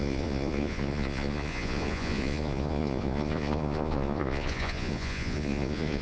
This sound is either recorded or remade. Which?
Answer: remade